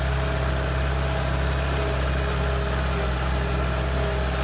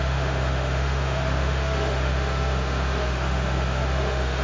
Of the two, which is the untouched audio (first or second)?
first